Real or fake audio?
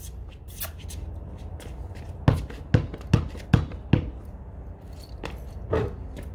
real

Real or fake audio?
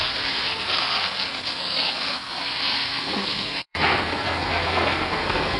fake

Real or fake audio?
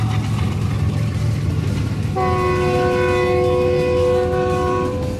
real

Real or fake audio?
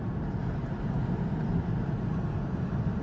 real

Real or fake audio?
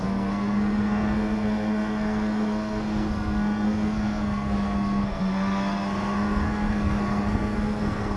fake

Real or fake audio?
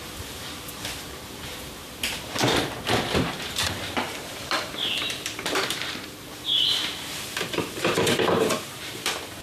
fake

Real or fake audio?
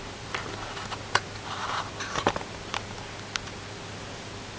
real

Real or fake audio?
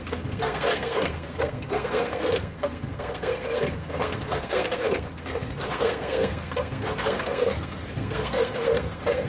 fake